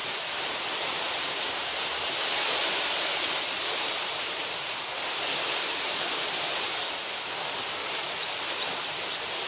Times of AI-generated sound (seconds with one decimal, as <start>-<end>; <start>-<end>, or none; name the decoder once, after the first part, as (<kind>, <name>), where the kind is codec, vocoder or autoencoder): 0.0-4.9 (vocoder, BigVGAN v2); 6.5-7.3; 7.8-8.4